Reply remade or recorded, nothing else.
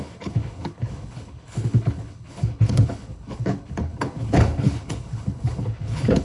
remade